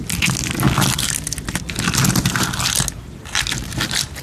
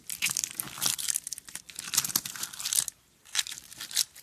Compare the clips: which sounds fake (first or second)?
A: second